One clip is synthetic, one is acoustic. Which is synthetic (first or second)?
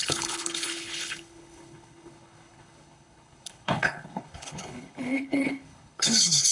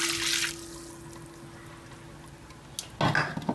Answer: first